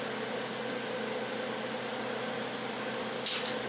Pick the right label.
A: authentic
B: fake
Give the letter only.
A